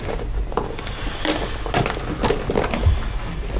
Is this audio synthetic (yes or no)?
no